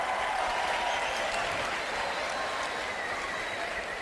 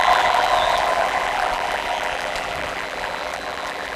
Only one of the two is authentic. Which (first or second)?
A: first